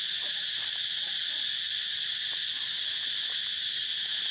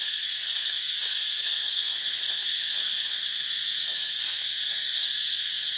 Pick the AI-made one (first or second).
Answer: second